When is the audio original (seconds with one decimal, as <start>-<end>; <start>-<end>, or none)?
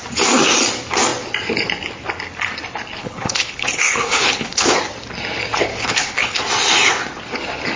0.0-3.0; 4.8-5.7; 6.4-7.8